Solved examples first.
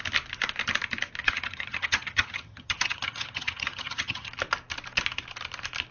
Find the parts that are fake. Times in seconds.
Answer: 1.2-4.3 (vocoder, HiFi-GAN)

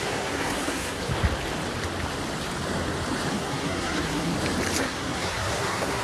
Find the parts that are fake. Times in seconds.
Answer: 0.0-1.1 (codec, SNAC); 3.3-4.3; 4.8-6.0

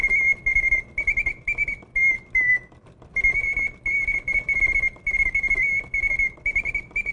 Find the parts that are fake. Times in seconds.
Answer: none

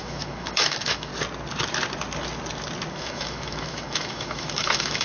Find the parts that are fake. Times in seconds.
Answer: 0.0-1.1 (autoencoder, DAC-VAE); 2.9-5.0